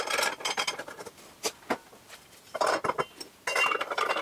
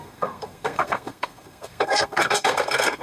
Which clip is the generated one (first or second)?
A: second